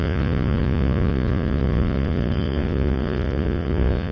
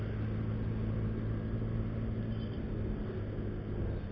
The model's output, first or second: first